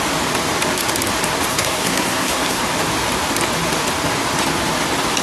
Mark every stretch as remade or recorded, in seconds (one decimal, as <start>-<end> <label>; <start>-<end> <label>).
0.0-1.5 recorded; 1.5-2.6 remade; 2.6-5.2 recorded

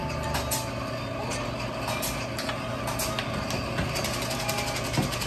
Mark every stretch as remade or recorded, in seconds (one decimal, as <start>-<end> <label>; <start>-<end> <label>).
0.0-5.3 recorded

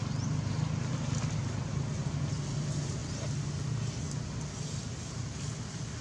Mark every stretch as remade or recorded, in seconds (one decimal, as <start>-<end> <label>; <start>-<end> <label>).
0.0-6.0 recorded

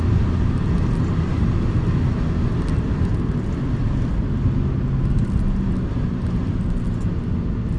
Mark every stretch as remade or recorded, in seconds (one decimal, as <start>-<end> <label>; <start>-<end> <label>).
0.0-7.8 recorded

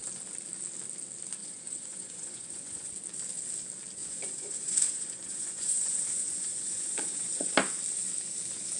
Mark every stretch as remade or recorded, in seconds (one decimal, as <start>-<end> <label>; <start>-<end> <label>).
0.0-1.4 recorded; 1.4-2.9 remade; 2.9-4.0 recorded; 4.0-7.5 remade; 7.5-8.8 recorded